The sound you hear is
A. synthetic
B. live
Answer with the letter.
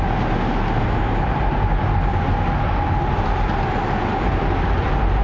B